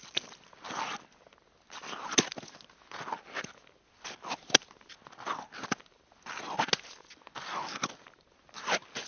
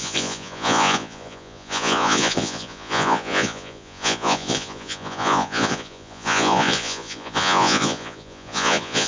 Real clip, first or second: first